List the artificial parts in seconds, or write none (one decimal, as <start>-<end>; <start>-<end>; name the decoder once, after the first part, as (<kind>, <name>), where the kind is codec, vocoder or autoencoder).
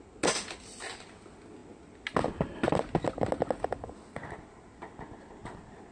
none